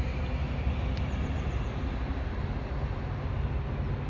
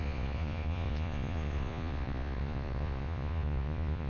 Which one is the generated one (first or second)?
second